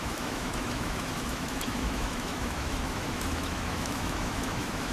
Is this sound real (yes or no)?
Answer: no